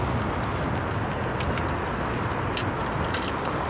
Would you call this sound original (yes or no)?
yes